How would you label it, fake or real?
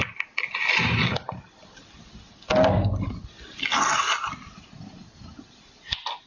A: real